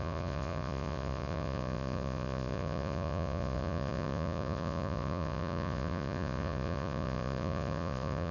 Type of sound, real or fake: fake